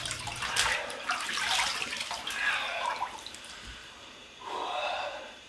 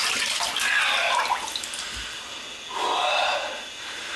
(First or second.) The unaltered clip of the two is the second